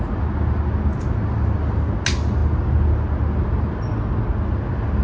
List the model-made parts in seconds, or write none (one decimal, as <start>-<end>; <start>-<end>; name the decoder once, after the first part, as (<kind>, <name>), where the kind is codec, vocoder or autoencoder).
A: none